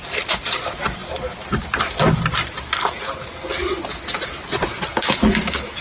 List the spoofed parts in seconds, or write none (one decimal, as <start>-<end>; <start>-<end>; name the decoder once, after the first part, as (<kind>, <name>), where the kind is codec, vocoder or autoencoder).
4.9-5.8 (codec, DAC)